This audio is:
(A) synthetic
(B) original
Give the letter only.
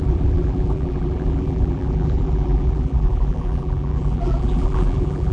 A